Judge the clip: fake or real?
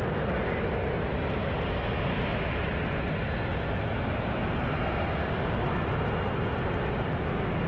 real